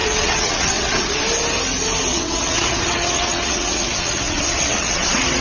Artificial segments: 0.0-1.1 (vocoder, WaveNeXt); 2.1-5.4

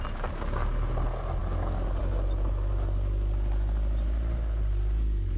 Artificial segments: none

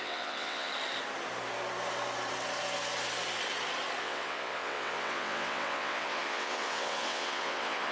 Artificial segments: 0.0-0.7 (vocoder, WaveNeXt); 4.0-7.9

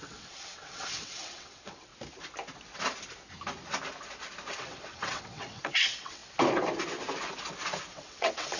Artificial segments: 0.0-1.9 (vocoder, WaveNeXt); 4.5-6.2; 7.9-8.6

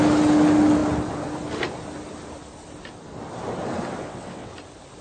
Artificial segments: 4.0-4.5 (vocoder, WaveNeXt)